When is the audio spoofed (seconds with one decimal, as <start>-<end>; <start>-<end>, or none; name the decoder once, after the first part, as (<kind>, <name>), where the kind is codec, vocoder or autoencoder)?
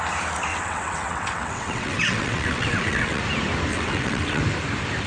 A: 0.5-3.2 (vocoder, WaveNeXt); 3.7-4.4